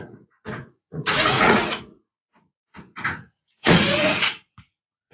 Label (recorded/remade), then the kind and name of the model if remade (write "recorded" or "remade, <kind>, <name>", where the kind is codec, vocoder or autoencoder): remade, vocoder, Vocos